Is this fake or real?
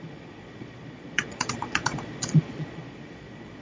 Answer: fake